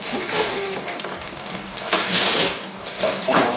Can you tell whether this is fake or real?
fake